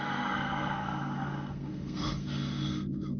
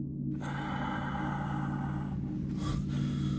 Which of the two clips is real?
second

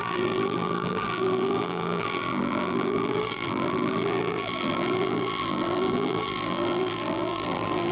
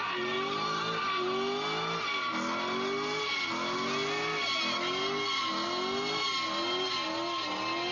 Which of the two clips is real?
second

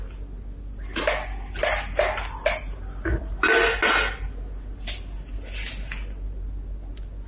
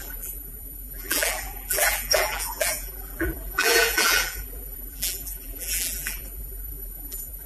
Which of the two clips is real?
first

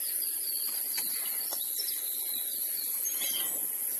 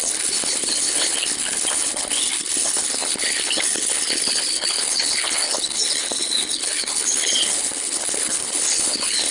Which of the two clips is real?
first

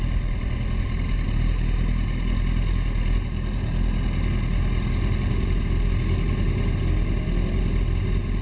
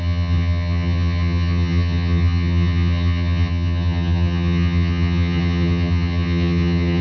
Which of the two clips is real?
first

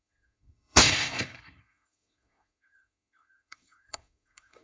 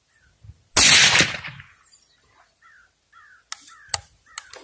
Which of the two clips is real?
second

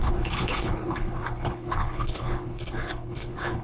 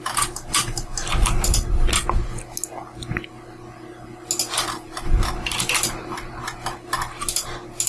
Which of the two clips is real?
second